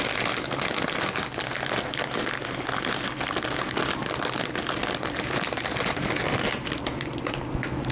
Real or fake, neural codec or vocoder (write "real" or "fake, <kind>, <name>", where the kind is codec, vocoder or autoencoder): real